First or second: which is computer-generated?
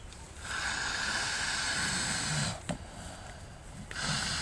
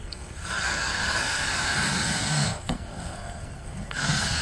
second